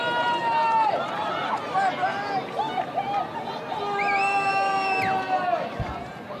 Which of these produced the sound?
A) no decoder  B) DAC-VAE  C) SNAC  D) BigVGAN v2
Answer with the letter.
A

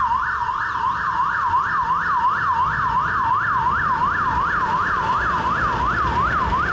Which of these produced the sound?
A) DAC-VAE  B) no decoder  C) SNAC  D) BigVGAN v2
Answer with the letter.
B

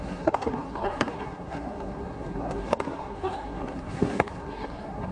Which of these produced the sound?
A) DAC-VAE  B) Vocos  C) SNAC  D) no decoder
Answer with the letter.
C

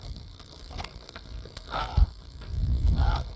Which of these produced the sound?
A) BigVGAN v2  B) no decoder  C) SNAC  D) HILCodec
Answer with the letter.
C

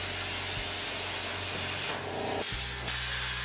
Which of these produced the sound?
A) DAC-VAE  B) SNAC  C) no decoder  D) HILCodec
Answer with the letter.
C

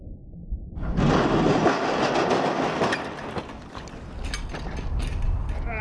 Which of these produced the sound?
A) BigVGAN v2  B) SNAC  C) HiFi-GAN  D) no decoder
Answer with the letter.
D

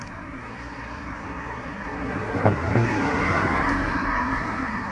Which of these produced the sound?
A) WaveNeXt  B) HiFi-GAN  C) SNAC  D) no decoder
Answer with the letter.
C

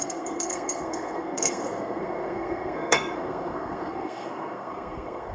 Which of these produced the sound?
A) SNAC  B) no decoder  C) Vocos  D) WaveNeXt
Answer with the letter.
A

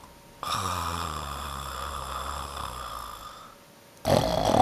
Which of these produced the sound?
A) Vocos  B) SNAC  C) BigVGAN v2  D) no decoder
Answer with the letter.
D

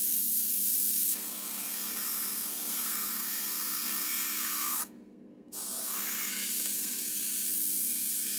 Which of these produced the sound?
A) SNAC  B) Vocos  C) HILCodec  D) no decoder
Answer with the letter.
A